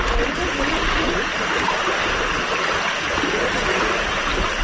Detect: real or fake real